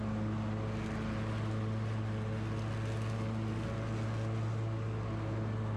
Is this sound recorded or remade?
recorded